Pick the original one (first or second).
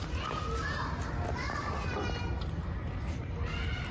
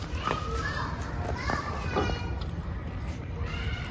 first